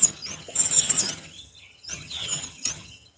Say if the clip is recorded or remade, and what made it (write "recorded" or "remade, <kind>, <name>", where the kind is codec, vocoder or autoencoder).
remade, vocoder, HiFi-GAN